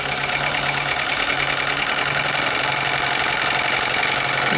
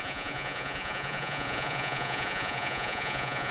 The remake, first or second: second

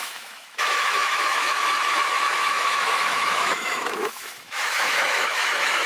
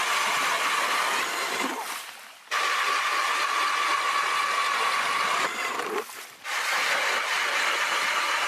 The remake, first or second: first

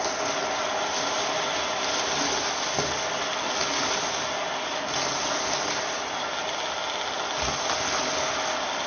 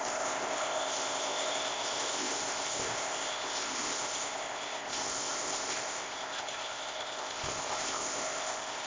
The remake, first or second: second